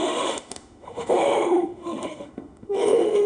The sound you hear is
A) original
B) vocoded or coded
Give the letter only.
B